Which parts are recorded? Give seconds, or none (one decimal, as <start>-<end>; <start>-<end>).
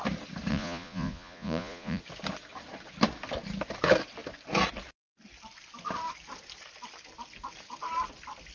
0.0-0.5; 2.0-8.5